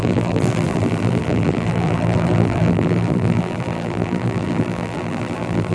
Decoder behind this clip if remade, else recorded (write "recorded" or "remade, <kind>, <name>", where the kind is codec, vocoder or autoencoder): remade, vocoder, BigVGAN v2